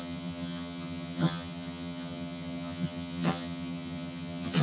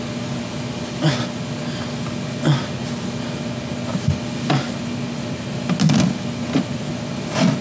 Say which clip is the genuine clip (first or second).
second